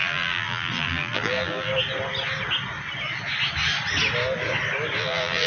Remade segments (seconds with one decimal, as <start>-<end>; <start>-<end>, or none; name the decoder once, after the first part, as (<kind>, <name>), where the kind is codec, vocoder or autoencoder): 0.0-1.7 (vocoder, BigVGAN v2); 5.0-5.5